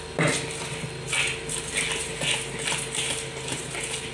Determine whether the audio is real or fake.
real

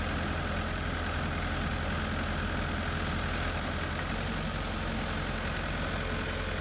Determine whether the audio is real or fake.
real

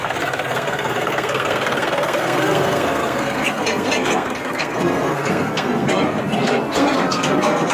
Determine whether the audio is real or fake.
fake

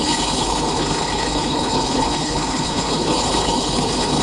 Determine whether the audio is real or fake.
fake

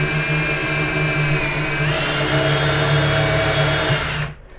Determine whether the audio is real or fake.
real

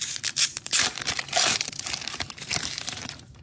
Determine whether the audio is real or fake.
fake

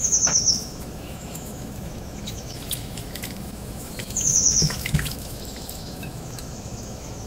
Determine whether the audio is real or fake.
fake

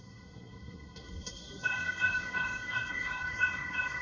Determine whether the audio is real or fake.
fake